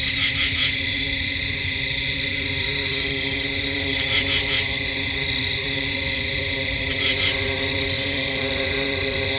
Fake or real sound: fake